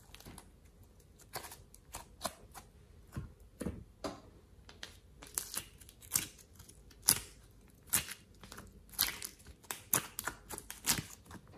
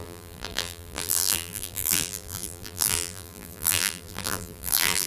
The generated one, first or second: second